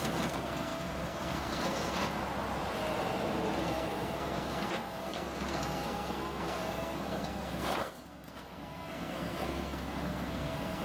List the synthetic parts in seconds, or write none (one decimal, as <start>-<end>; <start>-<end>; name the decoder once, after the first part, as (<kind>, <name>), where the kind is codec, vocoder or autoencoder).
0.0-2.2 (codec, SNAC); 3.6-10.8